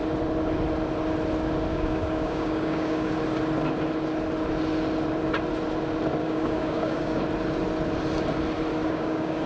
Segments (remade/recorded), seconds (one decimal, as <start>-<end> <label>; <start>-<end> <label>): 0.0-1.7 recorded; 1.7-3.1 remade; 3.1-6.2 recorded; 6.2-7.2 remade; 7.2-8.8 recorded; 8.8-9.5 remade